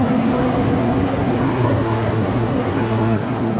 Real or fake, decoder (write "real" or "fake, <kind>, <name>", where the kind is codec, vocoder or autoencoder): fake, codec, SNAC